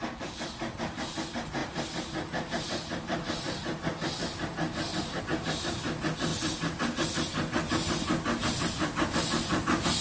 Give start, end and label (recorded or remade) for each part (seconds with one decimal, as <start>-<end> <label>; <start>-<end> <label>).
0.0-10.0 recorded